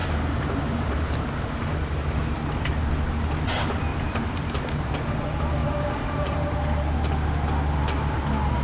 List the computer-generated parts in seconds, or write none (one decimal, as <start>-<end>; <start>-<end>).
0.0-1.8; 3.9-4.9; 5.6-6.9